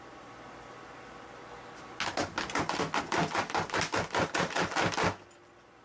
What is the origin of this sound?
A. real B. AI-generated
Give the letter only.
A